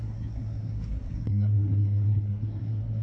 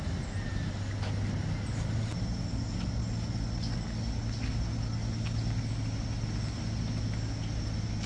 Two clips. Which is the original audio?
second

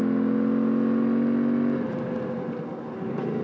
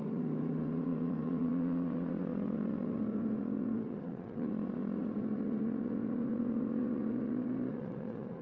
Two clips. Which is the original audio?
first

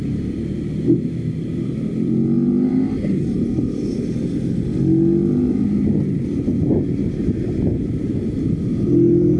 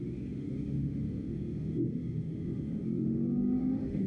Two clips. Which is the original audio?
first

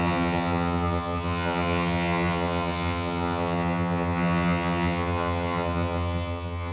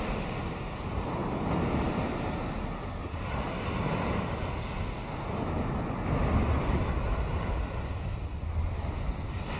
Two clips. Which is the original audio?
second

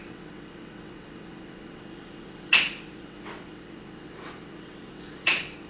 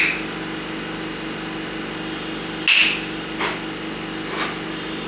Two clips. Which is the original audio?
second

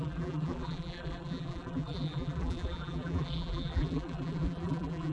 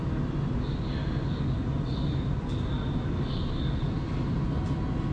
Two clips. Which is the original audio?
second